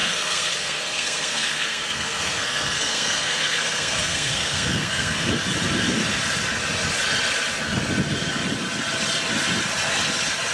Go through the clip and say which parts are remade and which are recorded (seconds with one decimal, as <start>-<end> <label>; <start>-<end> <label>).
0.0-5.3 remade; 5.3-10.5 recorded